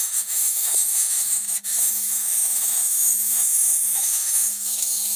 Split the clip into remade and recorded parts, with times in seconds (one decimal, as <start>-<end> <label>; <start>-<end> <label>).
0.0-5.2 remade